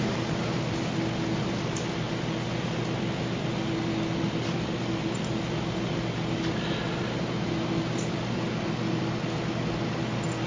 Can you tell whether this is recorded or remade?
recorded